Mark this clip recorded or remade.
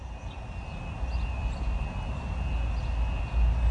recorded